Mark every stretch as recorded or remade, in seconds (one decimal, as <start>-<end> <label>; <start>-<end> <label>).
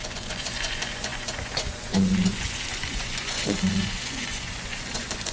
0.0-5.3 remade